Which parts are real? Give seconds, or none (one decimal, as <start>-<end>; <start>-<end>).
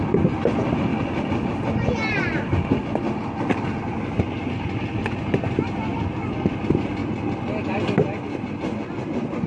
7.0-8.5